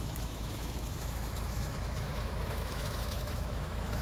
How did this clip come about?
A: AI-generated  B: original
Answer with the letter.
A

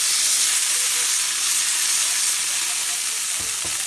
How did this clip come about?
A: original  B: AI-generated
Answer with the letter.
A